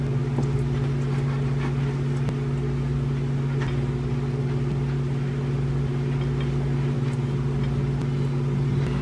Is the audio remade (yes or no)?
no